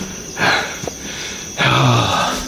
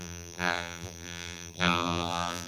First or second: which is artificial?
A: second